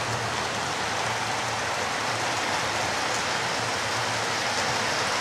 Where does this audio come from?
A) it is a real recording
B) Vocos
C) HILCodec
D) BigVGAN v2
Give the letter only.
A